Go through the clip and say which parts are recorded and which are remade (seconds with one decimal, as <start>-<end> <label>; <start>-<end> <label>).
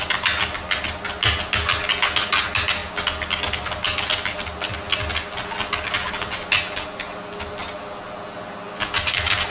0.0-9.5 recorded